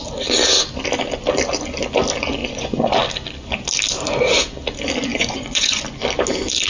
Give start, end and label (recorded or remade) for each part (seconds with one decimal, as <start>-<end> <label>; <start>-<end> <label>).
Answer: 0.0-2.4 recorded; 2.4-2.9 remade; 2.9-5.1 recorded; 5.1-5.8 remade; 5.8-6.7 recorded